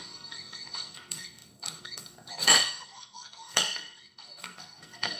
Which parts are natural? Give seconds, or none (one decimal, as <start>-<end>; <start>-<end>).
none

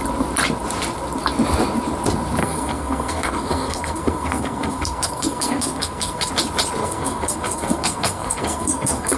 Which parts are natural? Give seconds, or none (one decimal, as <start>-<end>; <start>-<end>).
0.0-2.4; 6.3-6.8

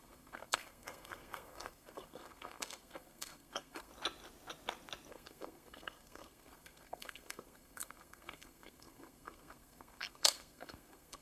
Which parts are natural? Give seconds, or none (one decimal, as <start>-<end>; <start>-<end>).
3.9-5.1

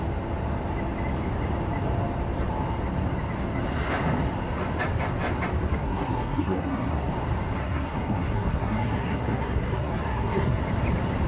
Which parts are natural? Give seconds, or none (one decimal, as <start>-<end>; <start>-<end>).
0.0-5.7; 7.1-7.6; 10.6-11.3